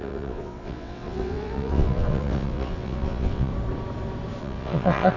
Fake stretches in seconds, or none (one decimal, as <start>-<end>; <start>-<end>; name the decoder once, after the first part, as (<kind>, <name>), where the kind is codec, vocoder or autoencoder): 0.0-3.5 (vocoder, WaveNeXt); 4.4-5.2